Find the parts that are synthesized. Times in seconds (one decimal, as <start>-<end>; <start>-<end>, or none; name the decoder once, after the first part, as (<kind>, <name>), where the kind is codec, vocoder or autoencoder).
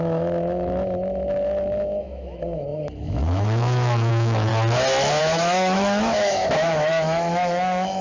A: 0.0-4.5 (autoencoder, DAC-VAE); 5.2-8.0